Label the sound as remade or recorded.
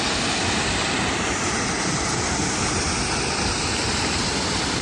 recorded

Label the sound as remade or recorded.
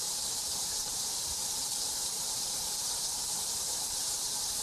remade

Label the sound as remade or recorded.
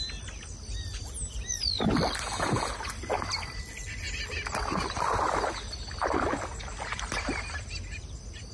recorded